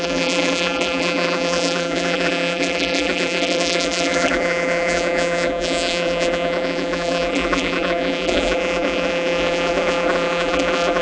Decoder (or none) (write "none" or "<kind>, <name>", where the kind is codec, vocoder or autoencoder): vocoder, BigVGAN v2